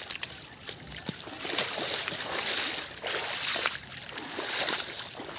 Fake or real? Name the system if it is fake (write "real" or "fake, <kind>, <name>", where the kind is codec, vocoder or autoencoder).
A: real